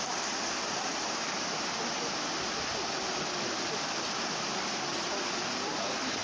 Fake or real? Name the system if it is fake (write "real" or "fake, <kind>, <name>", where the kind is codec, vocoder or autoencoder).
real